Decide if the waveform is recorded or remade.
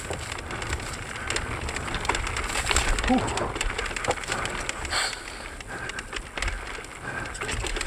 recorded